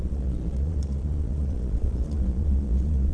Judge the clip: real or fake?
fake